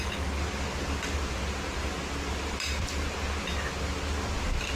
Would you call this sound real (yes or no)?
yes